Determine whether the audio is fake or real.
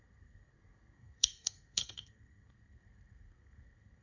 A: fake